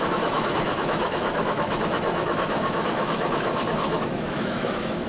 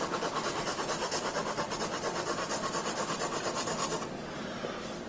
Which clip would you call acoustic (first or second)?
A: second